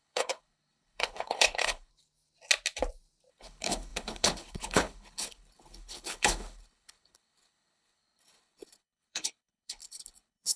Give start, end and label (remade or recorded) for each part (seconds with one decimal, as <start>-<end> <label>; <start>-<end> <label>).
0.0-1.9 remade; 1.9-3.3 recorded; 3.3-10.6 remade